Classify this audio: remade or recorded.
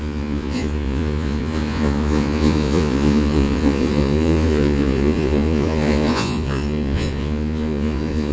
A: remade